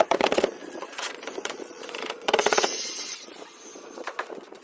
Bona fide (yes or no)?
no